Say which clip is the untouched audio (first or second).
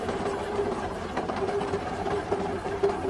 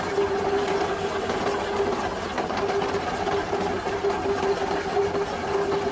second